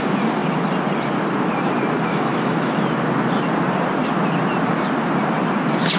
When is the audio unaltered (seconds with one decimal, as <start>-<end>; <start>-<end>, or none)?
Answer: 0.0-2.1; 2.8-6.0